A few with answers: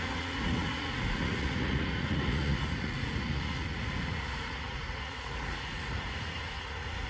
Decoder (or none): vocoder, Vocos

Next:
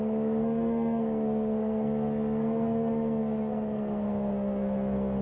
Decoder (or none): codec, SNAC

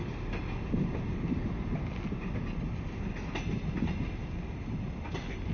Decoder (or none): none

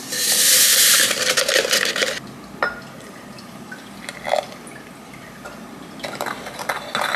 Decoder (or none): none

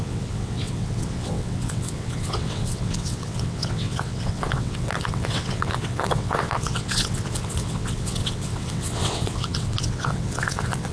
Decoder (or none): vocoder, WaveNeXt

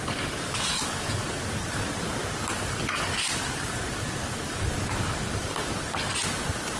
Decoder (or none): none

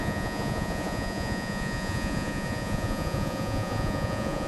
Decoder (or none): vocoder, Vocos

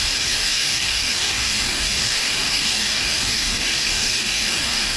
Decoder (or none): codec, DAC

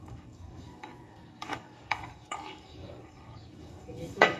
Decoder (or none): codec, DAC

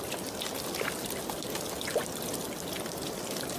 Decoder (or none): none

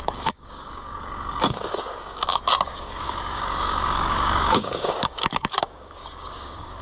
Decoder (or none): codec, DAC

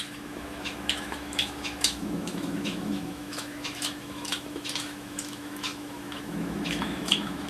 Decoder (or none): autoencoder, DAC-VAE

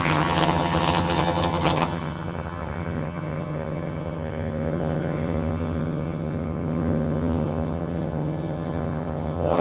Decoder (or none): vocoder, HiFi-GAN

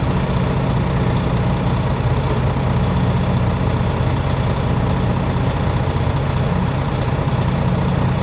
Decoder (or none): none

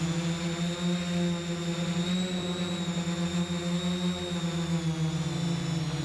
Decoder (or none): none